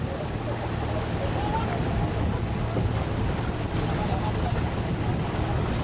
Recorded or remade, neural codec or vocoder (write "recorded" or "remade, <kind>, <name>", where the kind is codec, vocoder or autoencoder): recorded